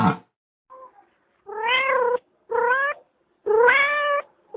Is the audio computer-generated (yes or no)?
no